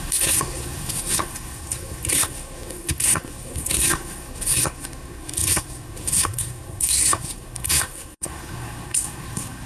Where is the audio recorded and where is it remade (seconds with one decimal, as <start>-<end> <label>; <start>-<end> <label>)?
0.0-9.7 remade